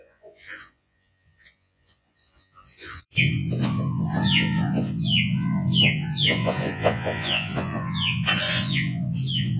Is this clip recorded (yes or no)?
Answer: no